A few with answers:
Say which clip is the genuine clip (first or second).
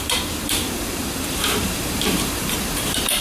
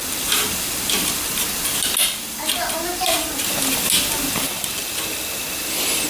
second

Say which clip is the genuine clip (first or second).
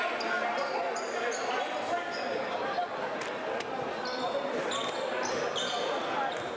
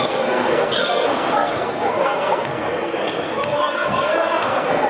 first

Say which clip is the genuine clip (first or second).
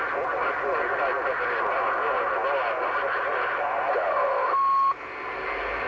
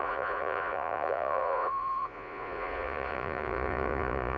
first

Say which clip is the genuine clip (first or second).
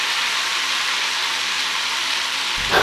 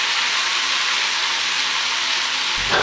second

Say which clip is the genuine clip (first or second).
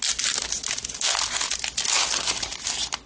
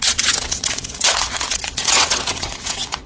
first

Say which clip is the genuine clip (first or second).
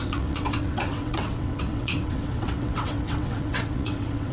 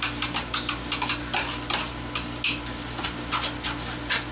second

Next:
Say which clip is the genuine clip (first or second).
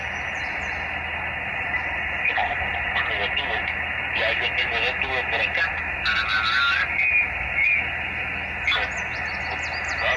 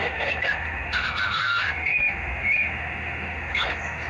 first